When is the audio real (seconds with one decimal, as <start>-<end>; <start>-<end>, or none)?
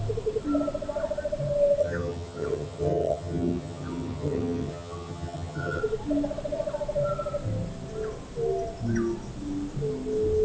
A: 0.0-1.8; 5.8-10.4